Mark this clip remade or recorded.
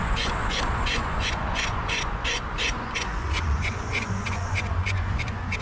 remade